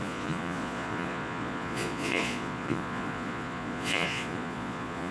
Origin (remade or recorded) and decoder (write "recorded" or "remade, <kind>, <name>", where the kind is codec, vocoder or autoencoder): remade, vocoder, Vocos